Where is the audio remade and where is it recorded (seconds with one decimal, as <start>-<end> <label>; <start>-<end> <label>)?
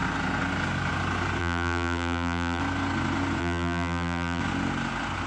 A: 0.0-1.4 recorded; 1.4-2.6 remade; 2.6-3.4 recorded; 3.4-4.4 remade; 4.4-5.3 recorded